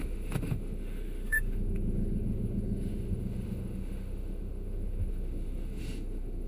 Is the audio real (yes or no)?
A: no